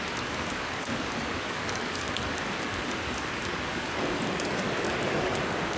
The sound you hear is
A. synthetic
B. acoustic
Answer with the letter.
A